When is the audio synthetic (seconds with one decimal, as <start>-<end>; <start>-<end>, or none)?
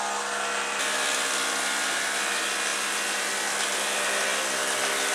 none